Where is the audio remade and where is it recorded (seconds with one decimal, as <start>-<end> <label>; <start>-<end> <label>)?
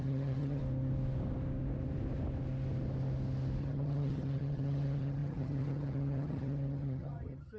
0.0-0.6 remade; 0.6-3.6 recorded; 3.6-7.6 remade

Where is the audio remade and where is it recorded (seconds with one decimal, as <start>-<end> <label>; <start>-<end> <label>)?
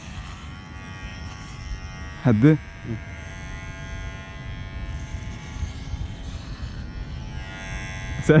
0.0-1.1 recorded; 1.1-1.6 remade; 1.6-2.2 recorded; 2.2-3.3 remade; 3.3-5.1 recorded; 5.1-6.6 remade; 6.6-8.4 recorded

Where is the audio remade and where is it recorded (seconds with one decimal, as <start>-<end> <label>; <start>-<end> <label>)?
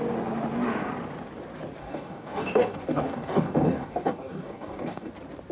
0.0-1.8 recorded; 1.8-5.1 remade; 5.1-5.5 recorded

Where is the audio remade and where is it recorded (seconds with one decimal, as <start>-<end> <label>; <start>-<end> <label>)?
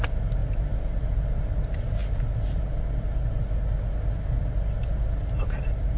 0.0-0.4 remade; 0.4-1.4 recorded; 1.4-2.0 remade; 2.0-4.8 recorded; 4.8-6.0 remade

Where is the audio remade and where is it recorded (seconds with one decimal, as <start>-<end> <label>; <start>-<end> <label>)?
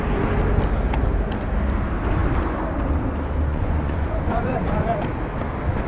0.0-3.5 recorded; 3.5-5.0 remade; 5.0-5.9 recorded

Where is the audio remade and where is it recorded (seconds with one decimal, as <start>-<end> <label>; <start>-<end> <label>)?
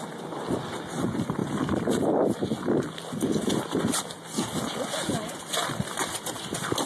0.0-6.8 recorded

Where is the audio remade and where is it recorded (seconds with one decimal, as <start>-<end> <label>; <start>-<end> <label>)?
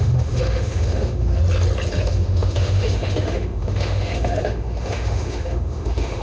0.0-1.4 remade; 1.4-2.0 recorded; 2.0-6.2 remade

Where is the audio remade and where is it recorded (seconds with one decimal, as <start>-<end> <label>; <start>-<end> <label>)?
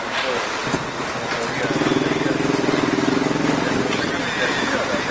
0.0-5.1 recorded